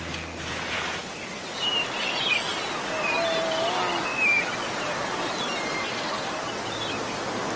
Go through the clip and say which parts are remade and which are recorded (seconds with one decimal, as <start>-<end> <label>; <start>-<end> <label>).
0.0-7.6 recorded